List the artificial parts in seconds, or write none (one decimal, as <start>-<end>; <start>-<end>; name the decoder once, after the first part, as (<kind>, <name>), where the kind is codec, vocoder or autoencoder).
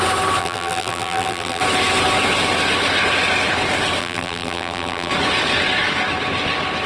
0.4-1.6 (vocoder, BigVGAN v2); 4.0-5.1